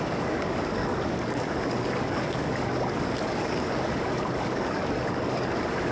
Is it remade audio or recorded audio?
remade